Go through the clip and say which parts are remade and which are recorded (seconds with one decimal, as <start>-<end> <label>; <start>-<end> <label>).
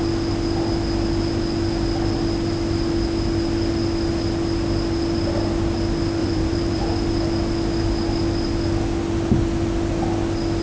0.0-6.2 recorded; 6.2-6.8 remade; 6.8-10.6 recorded